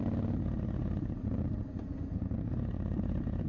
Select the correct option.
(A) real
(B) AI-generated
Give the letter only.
B